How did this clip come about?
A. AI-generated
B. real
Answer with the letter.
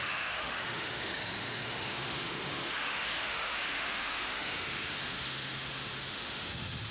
A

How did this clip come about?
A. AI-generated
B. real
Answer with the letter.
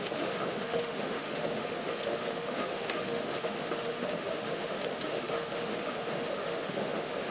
A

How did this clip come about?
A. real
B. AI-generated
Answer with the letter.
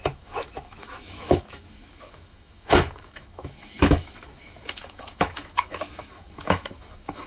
B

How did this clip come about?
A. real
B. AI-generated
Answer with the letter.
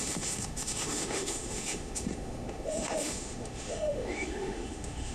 B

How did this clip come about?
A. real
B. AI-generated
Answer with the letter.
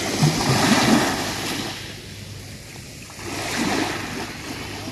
A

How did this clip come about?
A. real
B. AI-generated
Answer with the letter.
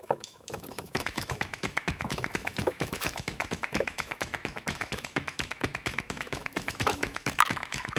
B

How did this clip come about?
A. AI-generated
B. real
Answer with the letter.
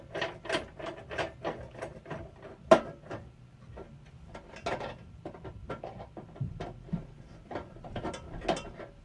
B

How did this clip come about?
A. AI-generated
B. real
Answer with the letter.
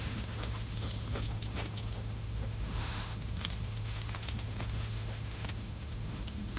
A